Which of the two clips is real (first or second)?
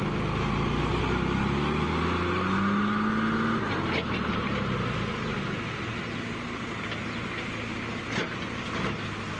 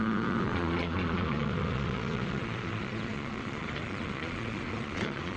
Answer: first